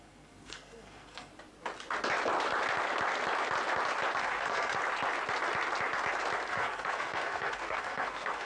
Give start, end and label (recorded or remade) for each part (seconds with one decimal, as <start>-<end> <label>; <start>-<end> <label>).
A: 0.0-1.3 remade; 1.3-4.2 recorded; 4.2-4.8 remade; 4.8-6.5 recorded; 6.5-8.5 remade